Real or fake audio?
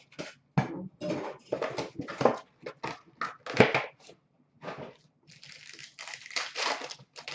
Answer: real